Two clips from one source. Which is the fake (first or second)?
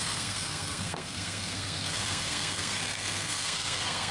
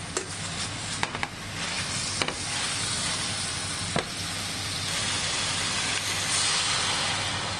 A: first